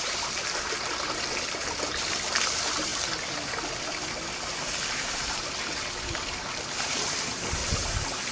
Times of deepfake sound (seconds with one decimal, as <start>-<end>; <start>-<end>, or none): 0.0-2.9; 5.1-7.6